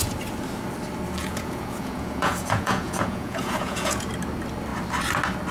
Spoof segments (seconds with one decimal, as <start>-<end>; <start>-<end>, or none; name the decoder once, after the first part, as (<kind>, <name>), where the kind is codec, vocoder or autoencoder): 1.2-4.1 (vocoder, Vocos)